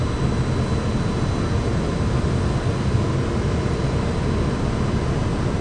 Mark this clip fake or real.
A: real